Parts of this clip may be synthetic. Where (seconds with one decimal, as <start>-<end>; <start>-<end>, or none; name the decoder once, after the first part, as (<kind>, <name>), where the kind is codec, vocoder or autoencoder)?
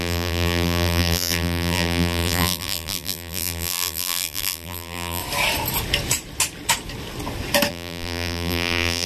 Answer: 0.0-5.2 (vocoder, BigVGAN v2); 7.7-9.1